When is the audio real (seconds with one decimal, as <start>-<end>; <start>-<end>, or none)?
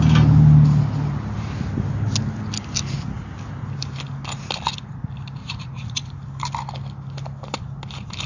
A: 0.0-5.4; 6.1-8.3